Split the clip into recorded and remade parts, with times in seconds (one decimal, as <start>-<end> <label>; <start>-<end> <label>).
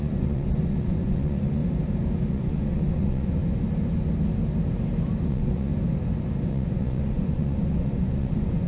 0.0-1.6 remade; 1.6-2.3 recorded; 2.3-3.4 remade; 3.4-5.3 recorded; 5.3-5.7 remade; 5.7-6.5 recorded; 6.5-8.7 remade